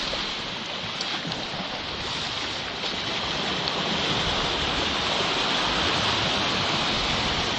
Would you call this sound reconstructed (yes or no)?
no